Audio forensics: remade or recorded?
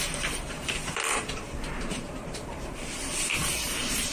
remade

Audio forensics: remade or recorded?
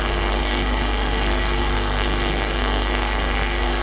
remade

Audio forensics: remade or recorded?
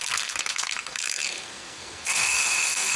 remade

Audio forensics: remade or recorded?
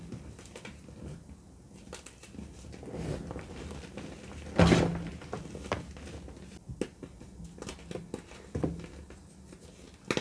recorded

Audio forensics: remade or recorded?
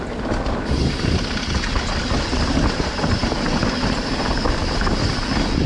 recorded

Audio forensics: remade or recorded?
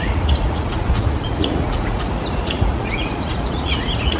remade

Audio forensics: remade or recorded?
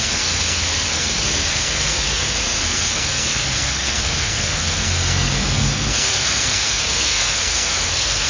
remade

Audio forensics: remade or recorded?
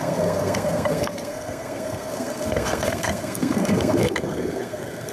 remade